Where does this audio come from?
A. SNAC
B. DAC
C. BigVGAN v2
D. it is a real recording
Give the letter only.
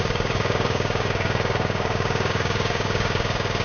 B